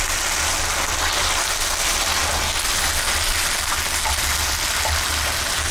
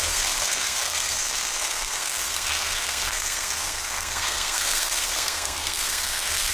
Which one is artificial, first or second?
second